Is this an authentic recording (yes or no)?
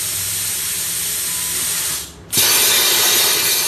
yes